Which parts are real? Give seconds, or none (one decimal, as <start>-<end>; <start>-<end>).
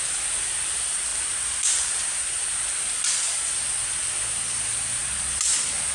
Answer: 0.0-5.9